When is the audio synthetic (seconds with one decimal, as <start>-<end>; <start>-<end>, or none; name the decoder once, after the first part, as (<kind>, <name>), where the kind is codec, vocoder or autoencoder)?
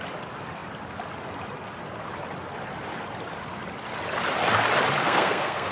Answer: 5.0-5.7 (codec, SNAC)